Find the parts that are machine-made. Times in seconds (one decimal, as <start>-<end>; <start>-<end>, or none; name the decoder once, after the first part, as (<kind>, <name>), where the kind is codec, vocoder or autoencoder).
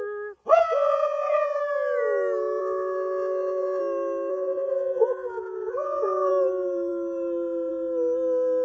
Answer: 0.5-1.6 (vocoder, Vocos); 2.6-3.8; 4.3-6.3